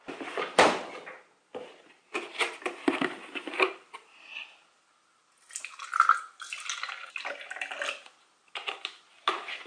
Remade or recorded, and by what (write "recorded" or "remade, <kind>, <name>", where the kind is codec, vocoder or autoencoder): recorded